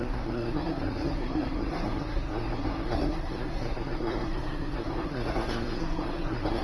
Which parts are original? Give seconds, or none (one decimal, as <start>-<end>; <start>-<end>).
none